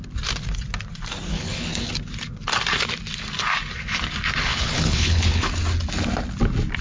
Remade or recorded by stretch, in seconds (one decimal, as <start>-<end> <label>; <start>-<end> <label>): 0.0-1.3 recorded; 1.3-1.9 remade; 1.9-4.5 recorded; 4.5-5.5 remade; 5.5-6.8 recorded